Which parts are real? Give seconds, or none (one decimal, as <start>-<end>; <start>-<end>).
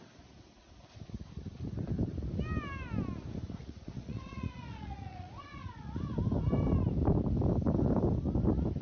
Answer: 0.0-3.6; 6.0-8.8